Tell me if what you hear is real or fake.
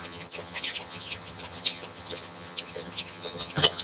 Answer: fake